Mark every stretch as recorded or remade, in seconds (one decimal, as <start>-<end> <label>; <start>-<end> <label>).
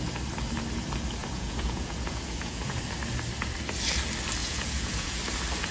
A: 0.0-1.2 recorded; 1.2-2.8 remade; 2.8-4.4 recorded; 4.4-5.2 remade; 5.2-5.7 recorded